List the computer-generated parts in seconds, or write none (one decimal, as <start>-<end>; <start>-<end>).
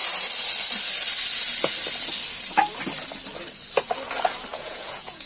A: 4.5-5.3